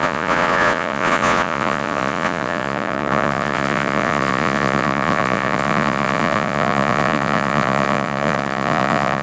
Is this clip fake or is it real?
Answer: fake